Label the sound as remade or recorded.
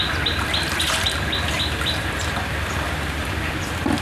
recorded